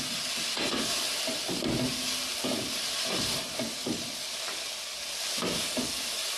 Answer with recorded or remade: recorded